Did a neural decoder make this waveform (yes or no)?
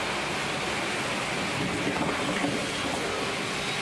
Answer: no